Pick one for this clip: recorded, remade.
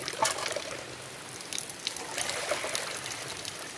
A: recorded